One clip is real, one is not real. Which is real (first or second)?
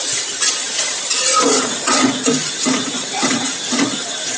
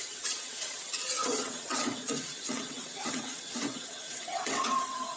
first